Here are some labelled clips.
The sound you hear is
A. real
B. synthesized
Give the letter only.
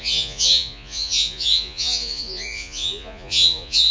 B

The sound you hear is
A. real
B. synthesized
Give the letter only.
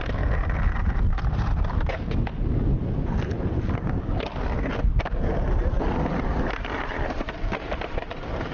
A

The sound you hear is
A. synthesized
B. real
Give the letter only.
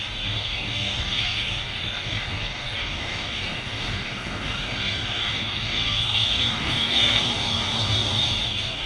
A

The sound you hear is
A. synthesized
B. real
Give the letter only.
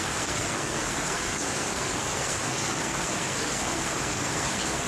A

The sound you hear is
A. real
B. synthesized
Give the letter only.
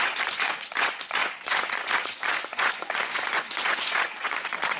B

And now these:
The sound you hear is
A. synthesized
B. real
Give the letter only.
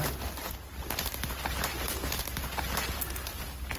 B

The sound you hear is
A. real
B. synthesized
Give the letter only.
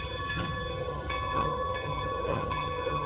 B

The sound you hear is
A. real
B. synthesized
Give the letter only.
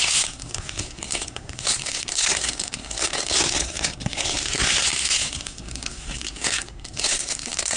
B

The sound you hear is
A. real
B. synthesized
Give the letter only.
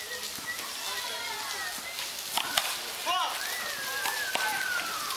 A